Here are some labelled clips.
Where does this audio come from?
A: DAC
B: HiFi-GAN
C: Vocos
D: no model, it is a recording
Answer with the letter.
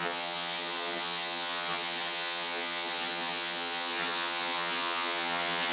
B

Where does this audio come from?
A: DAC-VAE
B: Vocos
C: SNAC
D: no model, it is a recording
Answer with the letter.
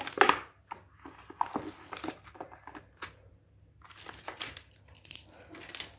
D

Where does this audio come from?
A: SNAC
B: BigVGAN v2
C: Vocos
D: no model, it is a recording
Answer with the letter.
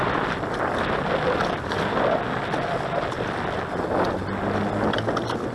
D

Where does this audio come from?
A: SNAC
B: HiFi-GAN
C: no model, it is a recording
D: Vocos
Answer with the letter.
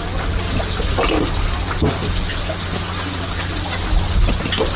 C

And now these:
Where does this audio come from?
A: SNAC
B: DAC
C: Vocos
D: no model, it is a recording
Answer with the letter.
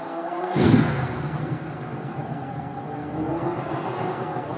A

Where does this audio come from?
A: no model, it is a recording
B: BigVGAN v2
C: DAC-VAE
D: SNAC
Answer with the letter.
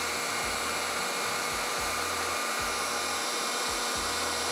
B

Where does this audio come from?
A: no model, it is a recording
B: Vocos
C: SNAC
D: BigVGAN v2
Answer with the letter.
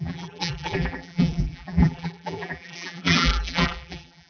D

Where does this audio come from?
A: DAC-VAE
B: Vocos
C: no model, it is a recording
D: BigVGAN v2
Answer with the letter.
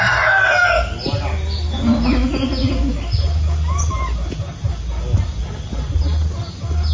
C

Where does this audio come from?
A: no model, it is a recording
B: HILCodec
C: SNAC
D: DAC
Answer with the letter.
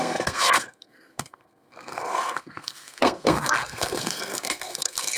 C